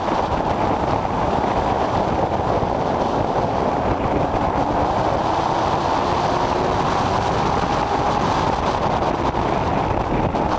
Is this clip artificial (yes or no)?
no